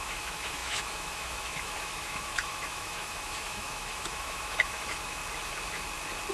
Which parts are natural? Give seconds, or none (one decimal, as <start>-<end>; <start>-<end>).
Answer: 5.2-6.3